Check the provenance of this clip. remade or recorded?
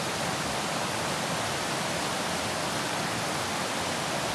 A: recorded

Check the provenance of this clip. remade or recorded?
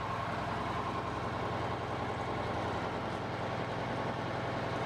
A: recorded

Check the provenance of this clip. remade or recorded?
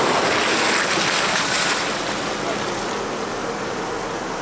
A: recorded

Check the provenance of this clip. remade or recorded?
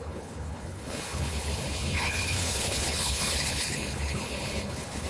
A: remade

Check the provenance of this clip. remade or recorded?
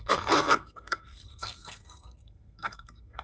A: remade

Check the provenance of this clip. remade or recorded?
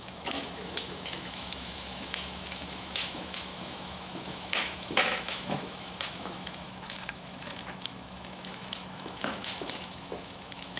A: remade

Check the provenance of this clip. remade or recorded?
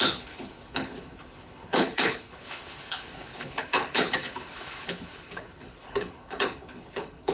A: remade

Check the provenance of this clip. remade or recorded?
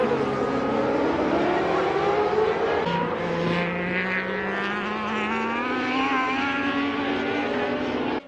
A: recorded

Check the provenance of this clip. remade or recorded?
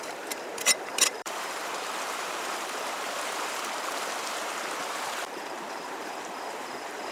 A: remade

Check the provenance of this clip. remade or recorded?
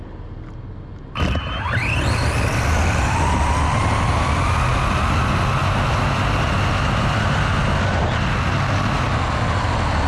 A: recorded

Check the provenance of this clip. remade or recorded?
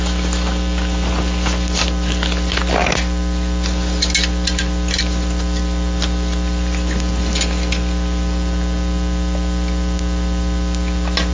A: recorded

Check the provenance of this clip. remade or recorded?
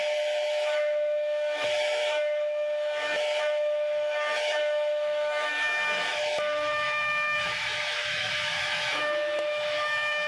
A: remade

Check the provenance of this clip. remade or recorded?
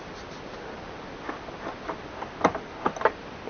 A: recorded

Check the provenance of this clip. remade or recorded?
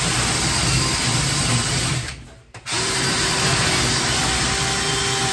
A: recorded